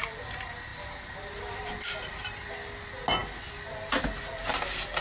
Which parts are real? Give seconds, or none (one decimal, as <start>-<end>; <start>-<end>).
0.0-0.7; 2.5-5.0